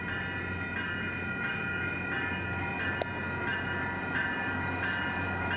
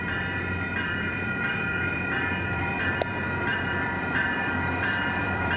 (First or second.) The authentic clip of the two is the first